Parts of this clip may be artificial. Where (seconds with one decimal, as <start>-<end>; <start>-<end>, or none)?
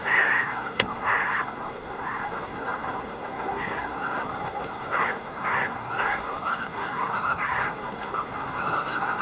0.0-9.2